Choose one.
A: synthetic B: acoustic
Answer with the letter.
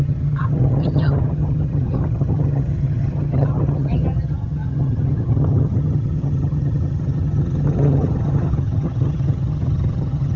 A